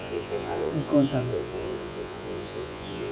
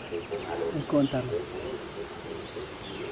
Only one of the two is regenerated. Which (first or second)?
first